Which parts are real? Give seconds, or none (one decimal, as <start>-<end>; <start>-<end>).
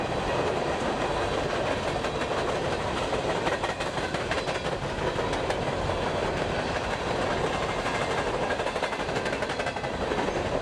0.0-6.2; 7.2-10.6